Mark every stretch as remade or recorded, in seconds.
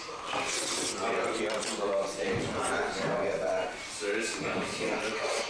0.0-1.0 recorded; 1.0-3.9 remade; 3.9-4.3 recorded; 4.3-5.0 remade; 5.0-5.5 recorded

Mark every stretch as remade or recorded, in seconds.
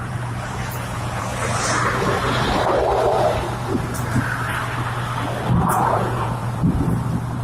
0.0-1.3 remade; 1.3-5.6 recorded; 5.6-6.4 remade; 6.4-7.4 recorded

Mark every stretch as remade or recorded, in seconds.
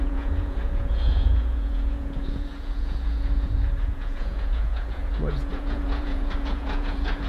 0.0-7.3 remade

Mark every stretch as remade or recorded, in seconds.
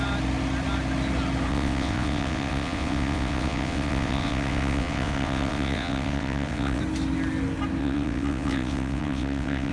0.0-1.5 recorded; 1.5-6.8 remade; 6.8-7.8 recorded; 7.8-9.7 remade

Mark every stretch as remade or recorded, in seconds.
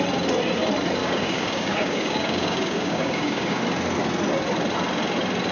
0.0-1.0 recorded; 1.0-3.6 remade; 3.6-5.5 recorded